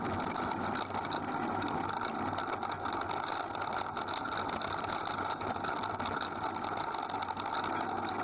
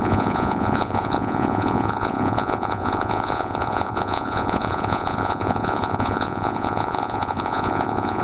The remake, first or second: second